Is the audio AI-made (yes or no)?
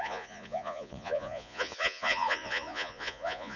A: yes